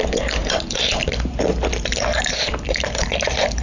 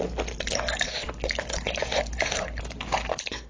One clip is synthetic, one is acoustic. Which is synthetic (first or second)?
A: first